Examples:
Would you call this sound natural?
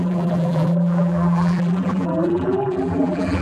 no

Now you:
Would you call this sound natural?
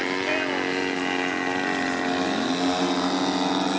yes